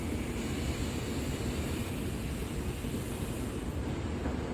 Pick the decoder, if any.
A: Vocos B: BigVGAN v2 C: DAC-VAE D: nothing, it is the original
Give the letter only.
D